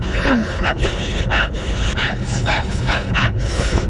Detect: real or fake fake